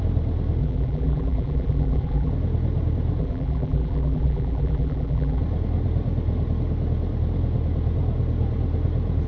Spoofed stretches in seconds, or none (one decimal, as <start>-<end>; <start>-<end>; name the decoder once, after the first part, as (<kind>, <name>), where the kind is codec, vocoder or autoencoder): 0.6-2.3 (vocoder, BigVGAN v2); 3.2-5.4